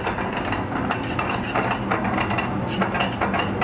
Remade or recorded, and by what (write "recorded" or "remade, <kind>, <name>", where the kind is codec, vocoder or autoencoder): recorded